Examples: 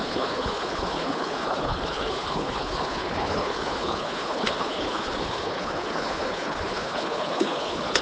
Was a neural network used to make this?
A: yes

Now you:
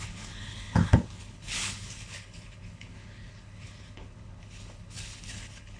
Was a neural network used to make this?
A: yes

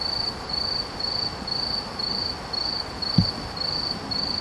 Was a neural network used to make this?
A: no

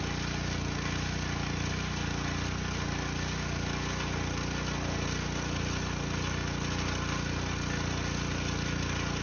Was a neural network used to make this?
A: no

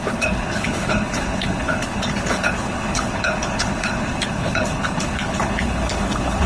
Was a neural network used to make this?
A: yes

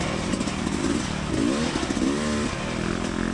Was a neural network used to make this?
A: no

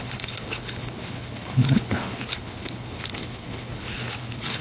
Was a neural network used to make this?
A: yes